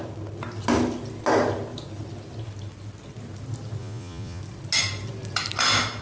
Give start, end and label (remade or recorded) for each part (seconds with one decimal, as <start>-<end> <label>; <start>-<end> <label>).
0.0-3.8 recorded; 3.8-4.4 remade; 4.4-6.0 recorded